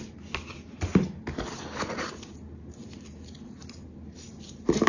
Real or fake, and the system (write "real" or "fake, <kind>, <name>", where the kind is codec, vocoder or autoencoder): real